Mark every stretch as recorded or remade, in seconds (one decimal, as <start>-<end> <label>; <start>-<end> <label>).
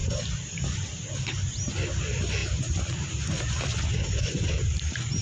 0.0-1.0 remade; 1.0-2.4 recorded; 2.4-5.2 remade